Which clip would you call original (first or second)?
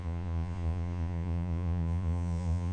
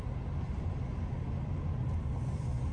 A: second